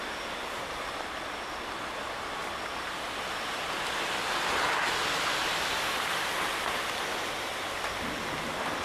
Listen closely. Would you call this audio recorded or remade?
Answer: recorded